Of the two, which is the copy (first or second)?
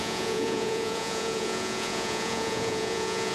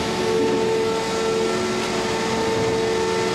first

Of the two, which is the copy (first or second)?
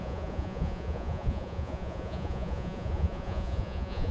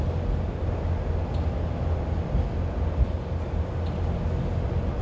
first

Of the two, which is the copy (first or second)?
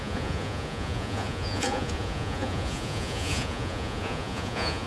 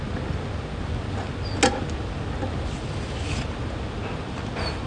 first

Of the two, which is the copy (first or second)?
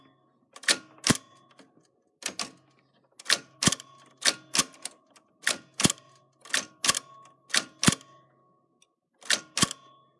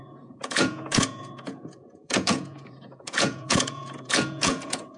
second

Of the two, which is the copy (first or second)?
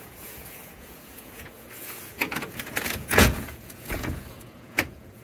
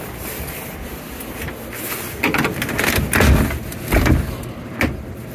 first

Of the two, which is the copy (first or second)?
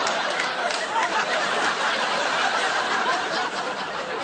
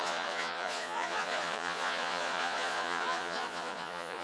second